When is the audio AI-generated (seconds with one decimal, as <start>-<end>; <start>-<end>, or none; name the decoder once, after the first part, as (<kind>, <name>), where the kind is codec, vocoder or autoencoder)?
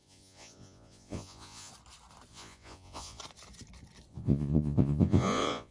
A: 0.0-1.7 (vocoder, Vocos); 2.3-3.2; 4.1-5.7